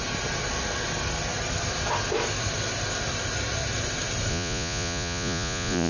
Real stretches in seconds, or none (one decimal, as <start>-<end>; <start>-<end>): 0.0-4.3